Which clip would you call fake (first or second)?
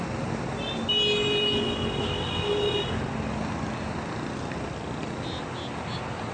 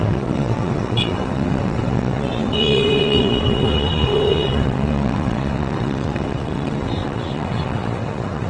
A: second